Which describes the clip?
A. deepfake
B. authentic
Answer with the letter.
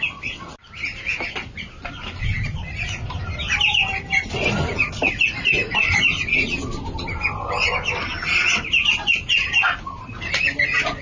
B